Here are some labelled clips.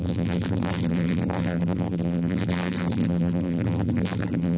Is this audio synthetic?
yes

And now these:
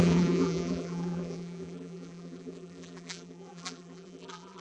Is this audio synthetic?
yes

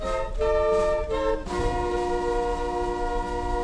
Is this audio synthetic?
no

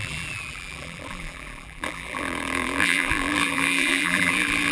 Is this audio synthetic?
yes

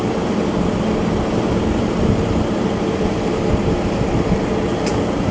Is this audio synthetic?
yes